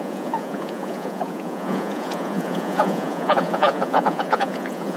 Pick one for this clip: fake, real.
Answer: fake